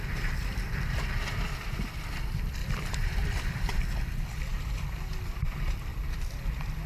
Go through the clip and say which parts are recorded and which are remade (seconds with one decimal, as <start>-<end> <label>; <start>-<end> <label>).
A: 0.0-2.6 recorded; 2.6-3.8 remade; 3.8-6.9 recorded